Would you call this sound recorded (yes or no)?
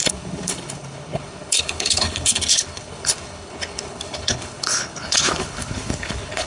no